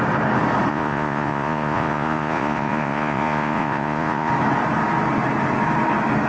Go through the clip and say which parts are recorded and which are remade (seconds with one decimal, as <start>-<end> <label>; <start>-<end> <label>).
0.0-0.7 recorded; 0.7-4.3 remade; 4.3-6.3 recorded